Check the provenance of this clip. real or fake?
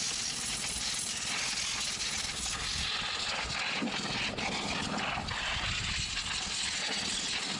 real